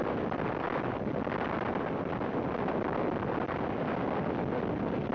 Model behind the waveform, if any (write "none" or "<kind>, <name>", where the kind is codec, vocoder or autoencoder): none